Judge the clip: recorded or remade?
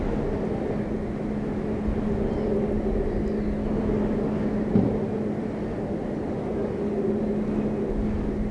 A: recorded